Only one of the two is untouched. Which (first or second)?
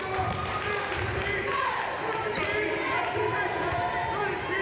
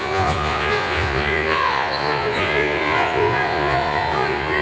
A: first